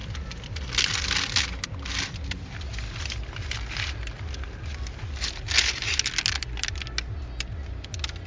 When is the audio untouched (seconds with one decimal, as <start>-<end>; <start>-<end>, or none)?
0.0-8.3